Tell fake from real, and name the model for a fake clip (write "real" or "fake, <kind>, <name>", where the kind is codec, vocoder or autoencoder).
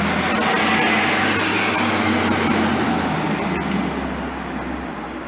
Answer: real